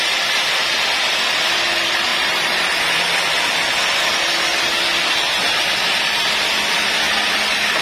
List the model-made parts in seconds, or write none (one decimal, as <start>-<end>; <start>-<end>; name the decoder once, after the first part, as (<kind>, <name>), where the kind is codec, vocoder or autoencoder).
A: 2.1-2.8 (vocoder, BigVGAN v2)